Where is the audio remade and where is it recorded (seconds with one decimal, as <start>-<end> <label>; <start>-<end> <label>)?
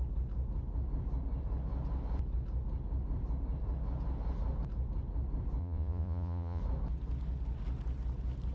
0.0-5.6 recorded; 5.6-6.6 remade; 6.6-8.5 recorded